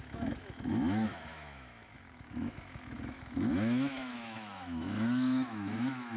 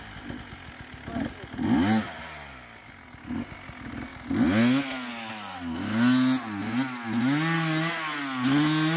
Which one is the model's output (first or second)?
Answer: first